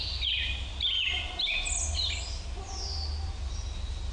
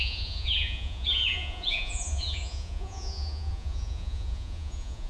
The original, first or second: first